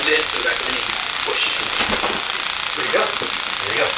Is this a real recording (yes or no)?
yes